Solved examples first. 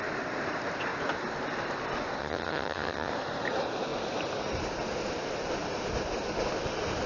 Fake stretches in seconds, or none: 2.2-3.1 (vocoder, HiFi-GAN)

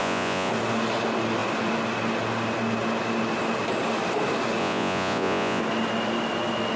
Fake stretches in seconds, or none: 0.0-0.5 (vocoder, Vocos); 4.6-5.6

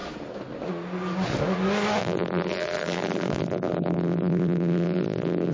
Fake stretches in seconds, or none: 2.0-5.5 (vocoder, BigVGAN v2)

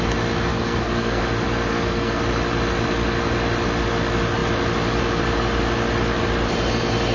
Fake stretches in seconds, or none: 0.5-1.2 (codec, SNAC); 1.7-2.2

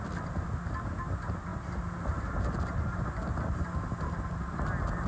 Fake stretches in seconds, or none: none

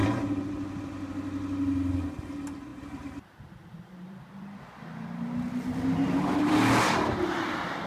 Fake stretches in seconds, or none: 2.7-4.6 (vocoder, BigVGAN v2); 6.0-6.5